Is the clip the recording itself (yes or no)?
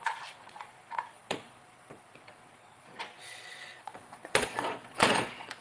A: no